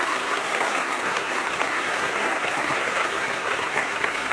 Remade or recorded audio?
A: remade